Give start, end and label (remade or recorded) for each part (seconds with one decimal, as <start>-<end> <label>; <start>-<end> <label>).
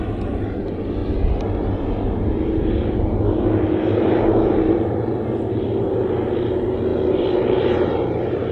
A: 0.0-8.5 recorded